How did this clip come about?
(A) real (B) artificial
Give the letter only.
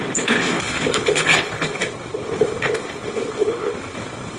B